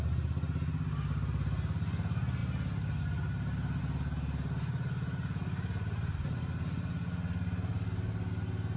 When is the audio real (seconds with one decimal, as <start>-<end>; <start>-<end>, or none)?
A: 0.0-8.8